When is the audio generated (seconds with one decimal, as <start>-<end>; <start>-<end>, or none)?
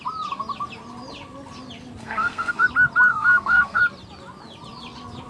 2.0-2.7; 3.1-3.8